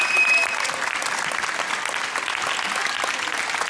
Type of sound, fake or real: real